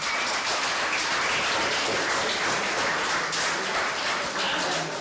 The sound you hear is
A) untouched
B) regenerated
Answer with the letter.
A